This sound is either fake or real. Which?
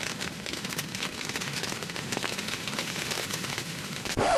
fake